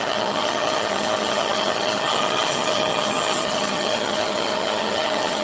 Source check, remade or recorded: remade